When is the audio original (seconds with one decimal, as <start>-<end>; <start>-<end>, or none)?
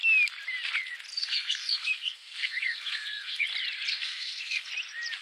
0.0-1.2; 3.4-3.9; 4.7-5.2